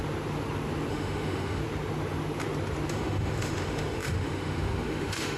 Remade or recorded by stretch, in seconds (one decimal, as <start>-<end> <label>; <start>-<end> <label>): 0.0-0.9 recorded; 0.9-1.6 remade; 1.6-2.9 recorded; 2.9-5.4 remade